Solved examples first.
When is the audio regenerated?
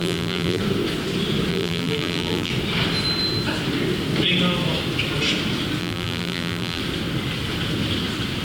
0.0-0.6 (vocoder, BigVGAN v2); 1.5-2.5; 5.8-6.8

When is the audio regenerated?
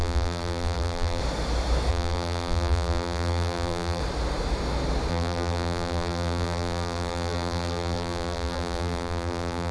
0.0-1.2 (vocoder, BigVGAN v2); 1.9-4.0; 5.1-9.7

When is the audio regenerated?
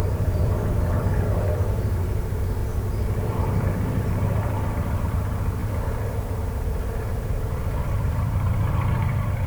0.0-2.6 (vocoder, BigVGAN v2); 3.3-9.5